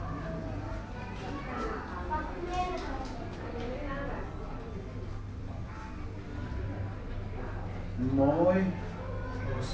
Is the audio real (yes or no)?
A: yes